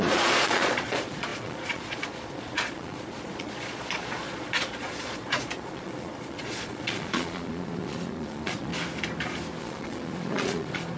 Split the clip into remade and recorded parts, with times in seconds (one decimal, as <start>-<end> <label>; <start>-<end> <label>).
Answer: 0.0-8.7 remade; 8.7-9.6 recorded; 9.6-11.0 remade